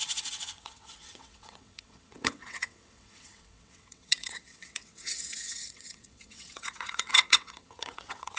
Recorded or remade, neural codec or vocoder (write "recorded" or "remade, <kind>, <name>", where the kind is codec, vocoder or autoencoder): remade, vocoder, WaveNeXt